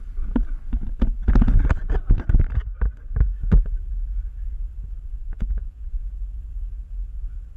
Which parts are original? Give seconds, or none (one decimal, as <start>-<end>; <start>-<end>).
0.0-5.2; 6.0-7.6